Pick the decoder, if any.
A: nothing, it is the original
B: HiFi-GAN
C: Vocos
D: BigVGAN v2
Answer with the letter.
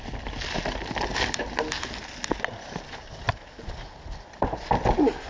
A